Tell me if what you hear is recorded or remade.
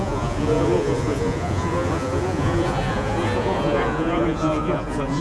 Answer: remade